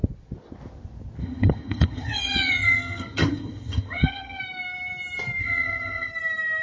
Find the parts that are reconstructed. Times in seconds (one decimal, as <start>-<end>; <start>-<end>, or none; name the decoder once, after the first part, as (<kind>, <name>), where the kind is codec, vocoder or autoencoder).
1.2-4.4 (vocoder, HiFi-GAN); 5.4-6.1